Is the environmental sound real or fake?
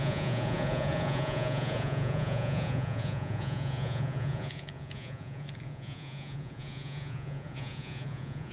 fake